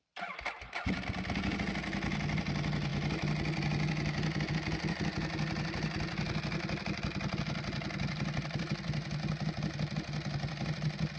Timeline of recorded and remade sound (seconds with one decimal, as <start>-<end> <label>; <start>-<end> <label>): 0.0-11.2 recorded